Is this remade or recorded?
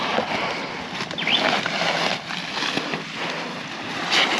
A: recorded